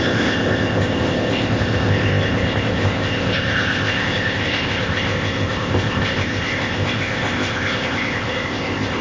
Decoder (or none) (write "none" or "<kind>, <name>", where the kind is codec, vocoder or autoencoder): codec, ZipCodec